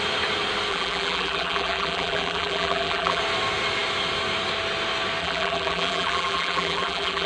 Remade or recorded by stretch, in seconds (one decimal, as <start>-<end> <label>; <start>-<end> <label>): 0.0-0.7 recorded; 0.7-3.2 remade; 3.2-5.2 recorded; 5.2-7.3 remade

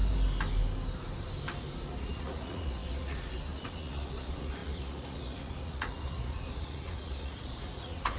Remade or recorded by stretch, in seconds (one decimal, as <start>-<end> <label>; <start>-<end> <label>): 0.0-2.0 recorded; 2.0-8.2 remade

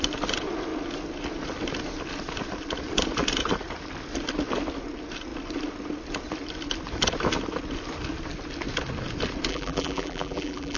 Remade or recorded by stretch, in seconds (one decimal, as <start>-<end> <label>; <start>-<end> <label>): 0.0-9.5 recorded; 9.5-10.8 remade

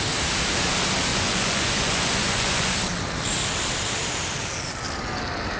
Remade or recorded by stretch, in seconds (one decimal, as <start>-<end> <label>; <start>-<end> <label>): 0.0-1.1 recorded; 1.1-2.7 remade; 2.7-5.6 recorded

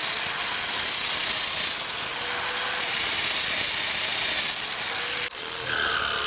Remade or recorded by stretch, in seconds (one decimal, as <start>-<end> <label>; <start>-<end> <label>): 0.0-6.3 recorded

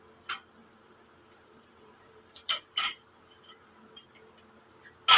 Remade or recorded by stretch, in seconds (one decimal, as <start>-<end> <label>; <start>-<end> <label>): 0.0-0.6 recorded; 0.6-3.7 remade; 3.7-5.2 recorded

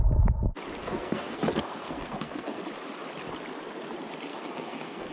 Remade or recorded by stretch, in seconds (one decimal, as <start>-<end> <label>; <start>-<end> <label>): 0.0-0.8 recorded; 0.8-2.6 remade; 2.6-4.3 recorded; 4.3-5.1 remade

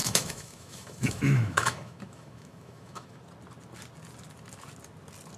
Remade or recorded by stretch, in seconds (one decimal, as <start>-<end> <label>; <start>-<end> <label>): 0.0-3.2 remade; 3.2-5.4 recorded